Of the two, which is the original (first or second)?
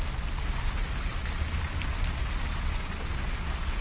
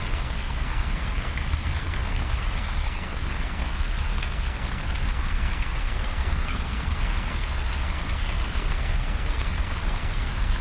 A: first